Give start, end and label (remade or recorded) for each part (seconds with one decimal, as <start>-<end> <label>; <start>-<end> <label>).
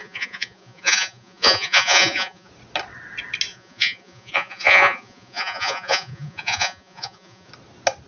0.0-2.5 remade; 2.5-3.5 recorded; 3.5-7.5 remade; 7.5-8.1 recorded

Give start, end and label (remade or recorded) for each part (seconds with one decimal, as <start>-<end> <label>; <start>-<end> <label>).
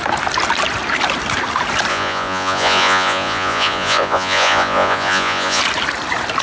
0.0-1.9 recorded; 1.9-5.6 remade; 5.6-6.4 recorded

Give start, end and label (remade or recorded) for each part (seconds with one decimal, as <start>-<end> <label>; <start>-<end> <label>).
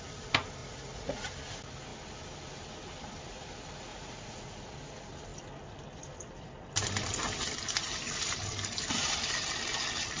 0.0-0.6 recorded; 0.6-1.3 remade; 1.3-3.9 recorded; 3.9-4.5 remade; 4.5-10.2 recorded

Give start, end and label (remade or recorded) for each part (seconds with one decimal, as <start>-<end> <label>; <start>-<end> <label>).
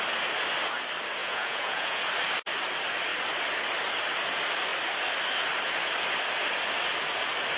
0.0-1.2 recorded; 1.2-2.0 remade; 2.0-7.6 recorded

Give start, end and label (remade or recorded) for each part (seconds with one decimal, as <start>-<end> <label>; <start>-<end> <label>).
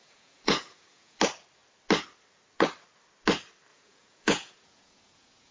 0.0-1.2 remade; 1.2-3.7 recorded; 3.7-5.5 remade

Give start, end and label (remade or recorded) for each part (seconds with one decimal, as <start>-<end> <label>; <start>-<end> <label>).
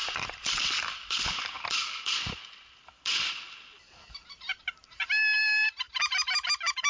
0.0-6.9 recorded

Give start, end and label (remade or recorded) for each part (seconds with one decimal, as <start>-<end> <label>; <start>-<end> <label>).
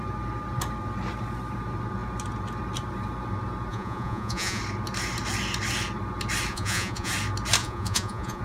0.0-3.7 recorded; 3.7-4.6 remade; 4.6-6.5 recorded; 6.5-7.1 remade; 7.1-7.6 recorded; 7.6-8.4 remade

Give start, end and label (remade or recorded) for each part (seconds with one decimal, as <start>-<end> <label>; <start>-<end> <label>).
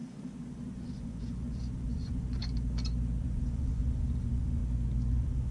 0.0-2.4 remade; 2.4-3.2 recorded; 3.2-4.6 remade; 4.6-5.1 recorded; 5.1-5.5 remade